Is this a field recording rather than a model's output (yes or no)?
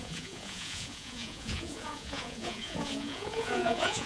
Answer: no